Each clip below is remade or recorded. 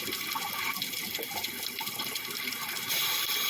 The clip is recorded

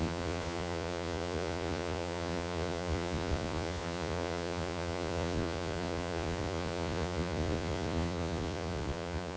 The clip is remade